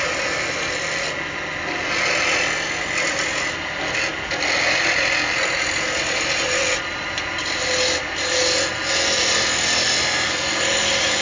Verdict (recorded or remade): recorded